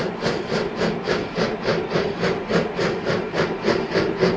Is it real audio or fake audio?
real